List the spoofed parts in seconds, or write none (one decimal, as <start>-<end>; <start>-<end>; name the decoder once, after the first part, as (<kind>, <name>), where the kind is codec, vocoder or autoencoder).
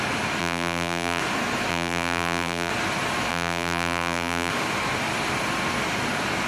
0.4-1.2 (vocoder, BigVGAN v2); 1.7-2.7; 3.3-4.5